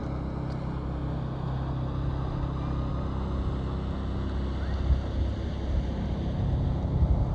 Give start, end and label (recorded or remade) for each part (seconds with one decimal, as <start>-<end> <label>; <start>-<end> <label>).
0.0-7.3 recorded